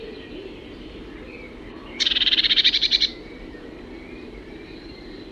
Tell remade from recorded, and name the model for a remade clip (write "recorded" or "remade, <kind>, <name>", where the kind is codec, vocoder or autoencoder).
remade, vocoder, BigVGAN v2